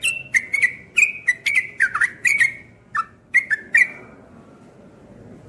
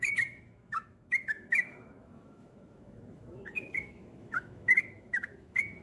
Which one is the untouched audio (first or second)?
first